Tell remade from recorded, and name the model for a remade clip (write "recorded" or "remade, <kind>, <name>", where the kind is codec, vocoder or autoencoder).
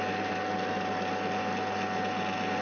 recorded